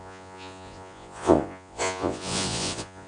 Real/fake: fake